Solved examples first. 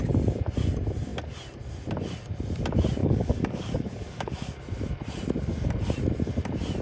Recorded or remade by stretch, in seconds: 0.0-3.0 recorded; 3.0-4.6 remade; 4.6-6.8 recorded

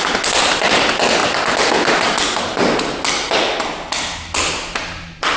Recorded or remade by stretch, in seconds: 0.0-5.4 recorded

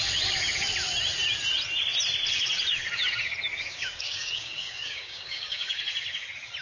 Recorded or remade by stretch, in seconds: 0.0-3.5 recorded; 3.5-5.8 remade; 5.8-6.6 recorded

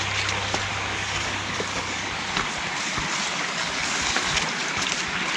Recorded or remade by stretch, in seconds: 0.0-0.7 recorded; 0.7-2.2 remade; 2.2-3.3 recorded; 3.3-4.3 remade; 4.3-5.4 recorded

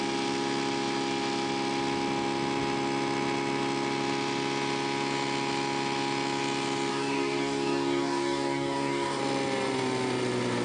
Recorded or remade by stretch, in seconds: 0.0-6.9 recorded; 6.9-9.2 remade; 9.2-10.6 recorded